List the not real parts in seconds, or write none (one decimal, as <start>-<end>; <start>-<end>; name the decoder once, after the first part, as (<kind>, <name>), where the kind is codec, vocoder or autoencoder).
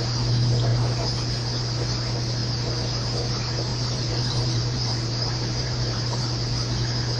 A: 3.7-6.2 (vocoder, BigVGAN v2)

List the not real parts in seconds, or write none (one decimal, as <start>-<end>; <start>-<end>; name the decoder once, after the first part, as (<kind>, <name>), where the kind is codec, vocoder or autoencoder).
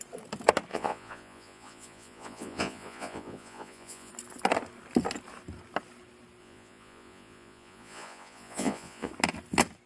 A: 0.7-4.1 (vocoder, Vocos); 6.4-9.1